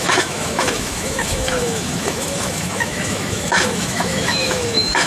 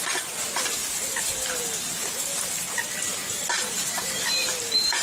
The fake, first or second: first